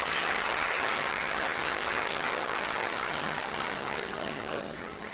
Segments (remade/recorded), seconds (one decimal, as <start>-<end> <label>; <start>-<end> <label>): 0.0-5.1 remade